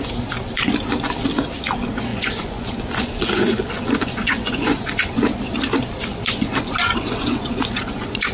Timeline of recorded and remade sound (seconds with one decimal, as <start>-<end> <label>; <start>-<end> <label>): 0.0-2.1 recorded; 2.1-5.1 remade; 5.1-6.1 recorded; 6.1-8.3 remade